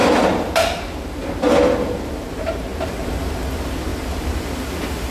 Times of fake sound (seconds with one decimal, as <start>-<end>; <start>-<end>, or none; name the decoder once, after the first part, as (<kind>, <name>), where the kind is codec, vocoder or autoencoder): 0.0-2.1 (vocoder, BigVGAN v2); 3.9-4.4

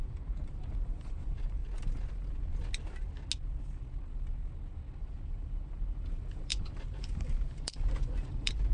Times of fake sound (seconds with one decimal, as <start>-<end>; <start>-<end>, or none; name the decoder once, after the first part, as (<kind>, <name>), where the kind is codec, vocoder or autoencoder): 0.0-1.6 (vocoder, BigVGAN v2); 5.0-8.7

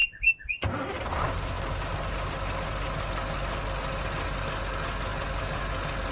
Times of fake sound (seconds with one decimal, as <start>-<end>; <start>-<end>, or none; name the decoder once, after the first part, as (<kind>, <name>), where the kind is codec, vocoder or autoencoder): none

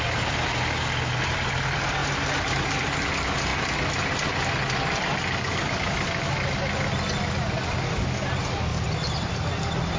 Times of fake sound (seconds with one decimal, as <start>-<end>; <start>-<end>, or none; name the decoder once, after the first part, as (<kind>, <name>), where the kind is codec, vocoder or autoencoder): 2.0-3.1 (vocoder, BigVGAN v2); 8.7-9.5

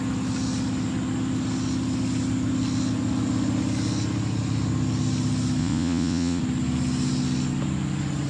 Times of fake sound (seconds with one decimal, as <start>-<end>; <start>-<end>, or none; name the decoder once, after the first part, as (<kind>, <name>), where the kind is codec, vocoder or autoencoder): 5.6-6.4 (vocoder, Vocos)

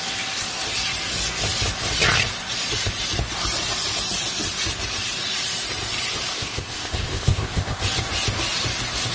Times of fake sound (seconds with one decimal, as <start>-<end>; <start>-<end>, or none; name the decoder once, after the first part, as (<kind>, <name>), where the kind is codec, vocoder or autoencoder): 6.3-7.8 (codec, ZipCodec)